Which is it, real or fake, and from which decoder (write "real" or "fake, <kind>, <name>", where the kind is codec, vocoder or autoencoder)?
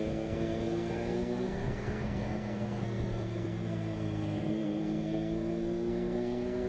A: fake, codec, SNAC